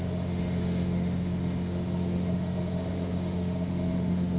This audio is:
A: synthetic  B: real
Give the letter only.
A